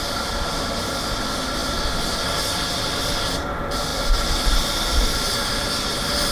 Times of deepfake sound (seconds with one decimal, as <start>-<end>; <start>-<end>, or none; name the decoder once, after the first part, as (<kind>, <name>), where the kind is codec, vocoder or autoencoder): none